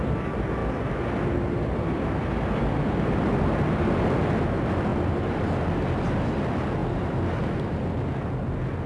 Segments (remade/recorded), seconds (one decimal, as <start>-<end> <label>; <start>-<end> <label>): 0.0-4.9 recorded; 4.9-5.5 remade; 5.5-6.8 recorded; 6.8-7.6 remade; 7.6-8.9 recorded